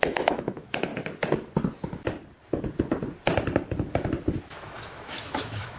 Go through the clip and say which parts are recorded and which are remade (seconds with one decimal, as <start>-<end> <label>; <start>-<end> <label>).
0.0-0.9 remade; 0.9-4.4 recorded; 4.4-5.8 remade